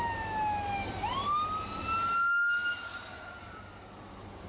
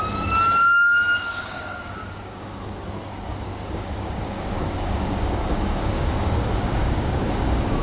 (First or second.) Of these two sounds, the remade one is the second